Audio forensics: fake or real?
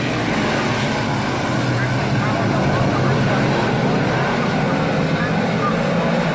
real